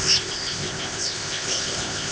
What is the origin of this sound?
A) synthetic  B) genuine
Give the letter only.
A